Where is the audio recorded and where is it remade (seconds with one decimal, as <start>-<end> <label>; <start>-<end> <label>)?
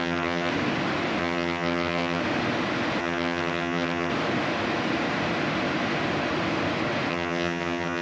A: 0.0-0.5 remade; 0.5-1.2 recorded; 1.2-2.2 remade; 2.2-3.0 recorded; 3.0-4.1 remade; 4.1-7.1 recorded; 7.1-8.0 remade